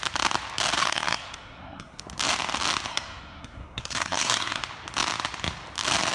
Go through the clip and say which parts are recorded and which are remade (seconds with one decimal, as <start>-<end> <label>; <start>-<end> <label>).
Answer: 0.0-0.8 recorded; 0.8-2.0 remade; 2.0-2.9 recorded; 2.9-4.6 remade; 4.6-6.1 recorded